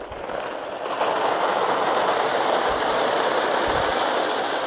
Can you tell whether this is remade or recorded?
recorded